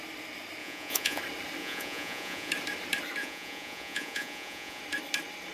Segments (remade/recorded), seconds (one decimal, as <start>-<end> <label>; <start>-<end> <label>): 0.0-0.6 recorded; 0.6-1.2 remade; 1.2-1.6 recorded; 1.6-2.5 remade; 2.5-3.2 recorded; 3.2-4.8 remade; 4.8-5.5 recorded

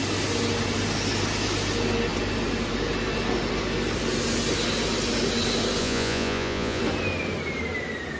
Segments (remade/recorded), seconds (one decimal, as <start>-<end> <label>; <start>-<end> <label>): 0.0-5.8 recorded; 5.8-6.8 remade; 6.8-8.2 recorded

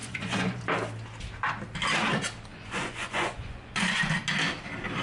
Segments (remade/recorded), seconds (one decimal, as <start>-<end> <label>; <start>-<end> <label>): 0.0-0.6 remade; 0.6-2.5 recorded; 2.5-4.1 remade; 4.1-5.0 recorded